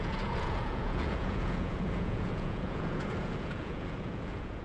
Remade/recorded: remade